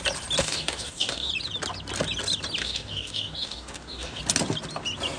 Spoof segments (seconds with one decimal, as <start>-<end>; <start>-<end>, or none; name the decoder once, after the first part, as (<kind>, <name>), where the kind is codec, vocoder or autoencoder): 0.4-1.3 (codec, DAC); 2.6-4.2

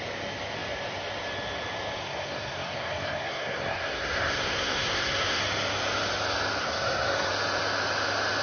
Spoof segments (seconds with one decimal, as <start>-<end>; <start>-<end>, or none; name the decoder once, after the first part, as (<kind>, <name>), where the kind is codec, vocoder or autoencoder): 2.0-5.4 (codec, SNAC); 6.6-7.3

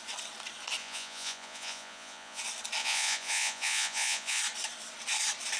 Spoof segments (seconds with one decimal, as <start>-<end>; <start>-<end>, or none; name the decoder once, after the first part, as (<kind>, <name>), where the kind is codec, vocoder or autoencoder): 0.8-2.4 (vocoder, Vocos); 2.8-4.4

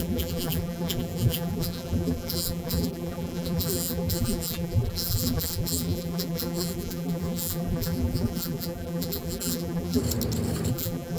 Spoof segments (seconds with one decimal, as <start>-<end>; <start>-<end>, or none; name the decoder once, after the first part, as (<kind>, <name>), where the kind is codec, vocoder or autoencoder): 0.0-10.0 (vocoder, BigVGAN v2); 10.7-11.2

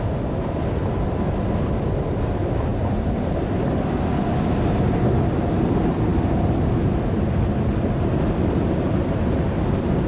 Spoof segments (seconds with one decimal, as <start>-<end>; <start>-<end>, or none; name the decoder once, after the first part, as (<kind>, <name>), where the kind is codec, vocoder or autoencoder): none

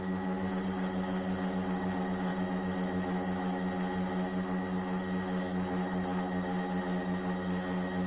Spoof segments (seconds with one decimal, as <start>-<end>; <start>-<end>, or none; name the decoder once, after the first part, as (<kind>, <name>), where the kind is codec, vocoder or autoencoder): none

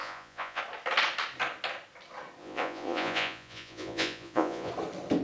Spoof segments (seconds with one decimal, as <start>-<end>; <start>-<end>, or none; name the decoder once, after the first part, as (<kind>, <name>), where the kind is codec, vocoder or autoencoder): 0.0-0.6 (vocoder, Vocos); 2.4-4.7